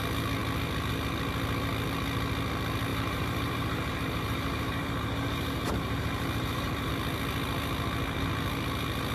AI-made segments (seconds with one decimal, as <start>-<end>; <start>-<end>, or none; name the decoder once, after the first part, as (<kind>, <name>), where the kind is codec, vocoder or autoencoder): 2.9-6.9 (vocoder, BigVGAN v2)